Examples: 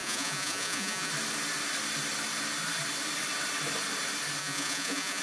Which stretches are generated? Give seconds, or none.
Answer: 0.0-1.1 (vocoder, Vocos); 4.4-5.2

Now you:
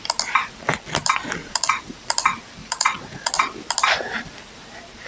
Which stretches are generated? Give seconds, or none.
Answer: 1.4-2.1 (vocoder, Vocos); 2.6-3.3

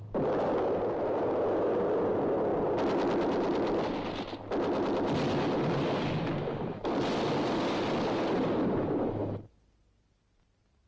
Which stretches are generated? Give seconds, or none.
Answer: none

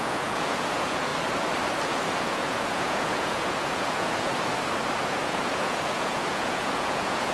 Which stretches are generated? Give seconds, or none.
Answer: 0.0-1.1 (vocoder, Vocos); 2.2-4.3; 5.0-7.3